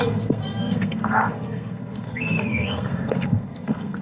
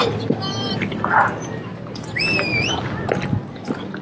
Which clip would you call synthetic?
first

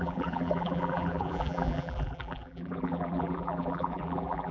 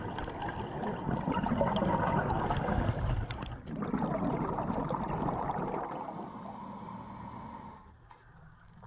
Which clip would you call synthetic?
first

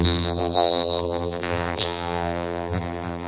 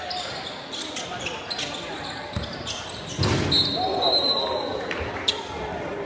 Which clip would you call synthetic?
first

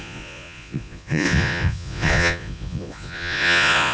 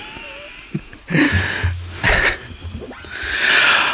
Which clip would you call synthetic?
first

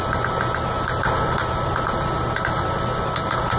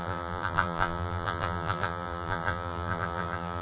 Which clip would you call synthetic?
second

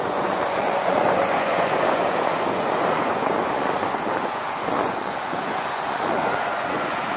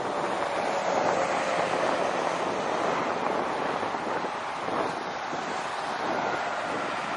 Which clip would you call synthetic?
first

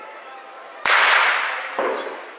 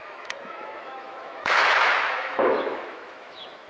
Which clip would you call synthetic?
second